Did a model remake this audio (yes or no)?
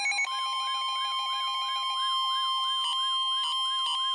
no